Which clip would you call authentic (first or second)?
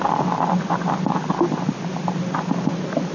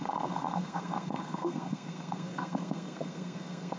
first